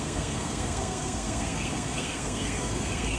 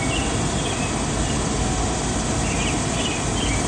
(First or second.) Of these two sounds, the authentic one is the second